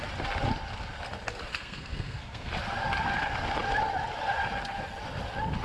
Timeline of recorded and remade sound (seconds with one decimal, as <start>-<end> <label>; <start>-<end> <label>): 0.0-1.5 recorded; 1.5-2.5 remade; 2.5-5.6 recorded